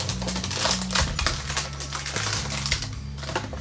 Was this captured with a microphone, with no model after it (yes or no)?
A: yes